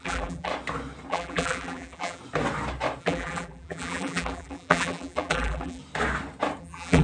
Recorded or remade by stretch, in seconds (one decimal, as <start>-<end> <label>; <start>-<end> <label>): 0.0-0.5 remade; 0.5-1.1 recorded; 1.1-2.2 remade; 2.2-3.0 recorded; 3.0-5.8 remade; 5.8-6.6 recorded; 6.6-7.0 remade